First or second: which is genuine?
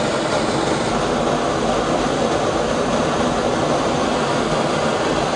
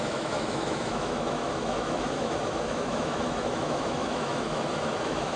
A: first